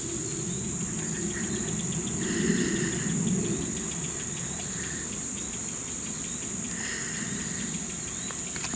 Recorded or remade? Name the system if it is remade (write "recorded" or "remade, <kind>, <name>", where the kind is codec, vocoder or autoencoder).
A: recorded